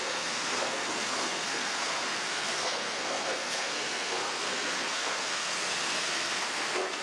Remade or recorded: remade